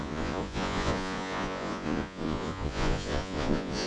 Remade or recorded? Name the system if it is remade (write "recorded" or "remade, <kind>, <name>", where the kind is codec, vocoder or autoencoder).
remade, vocoder, Vocos